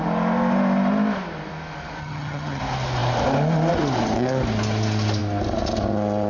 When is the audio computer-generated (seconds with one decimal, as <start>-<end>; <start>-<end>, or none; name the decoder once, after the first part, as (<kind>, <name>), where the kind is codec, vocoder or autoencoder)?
2.0-2.6 (vocoder, HiFi-GAN)